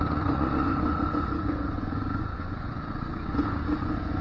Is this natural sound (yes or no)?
no